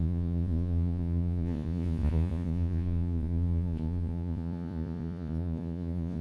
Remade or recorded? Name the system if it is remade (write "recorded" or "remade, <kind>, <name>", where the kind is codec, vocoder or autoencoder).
remade, vocoder, Vocos